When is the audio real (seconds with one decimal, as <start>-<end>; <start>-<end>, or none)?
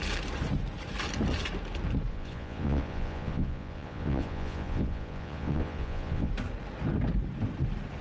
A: 0.0-2.1; 6.3-8.0